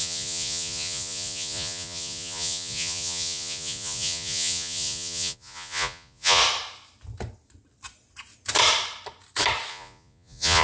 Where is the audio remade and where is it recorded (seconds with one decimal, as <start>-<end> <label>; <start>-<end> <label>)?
0.0-6.4 remade; 6.4-9.7 recorded; 9.7-10.6 remade